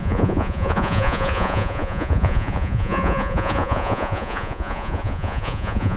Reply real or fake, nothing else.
fake